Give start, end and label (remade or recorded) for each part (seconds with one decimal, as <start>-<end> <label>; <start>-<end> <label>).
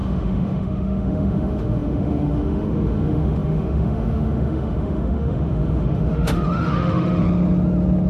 0.0-7.2 remade; 7.2-8.1 recorded